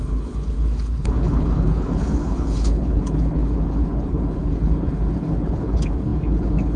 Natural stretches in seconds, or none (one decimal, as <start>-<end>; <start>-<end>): none